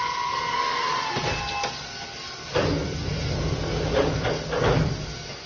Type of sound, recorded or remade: recorded